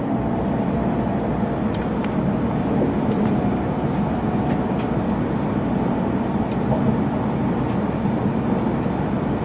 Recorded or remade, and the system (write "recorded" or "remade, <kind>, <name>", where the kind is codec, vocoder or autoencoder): recorded